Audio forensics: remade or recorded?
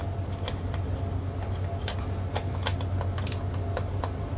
recorded